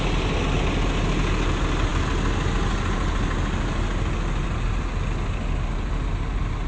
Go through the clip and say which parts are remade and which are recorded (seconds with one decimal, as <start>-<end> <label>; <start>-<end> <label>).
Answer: 0.0-6.7 recorded